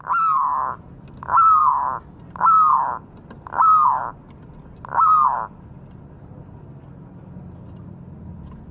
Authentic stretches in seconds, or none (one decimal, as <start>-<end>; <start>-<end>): 0.0-8.7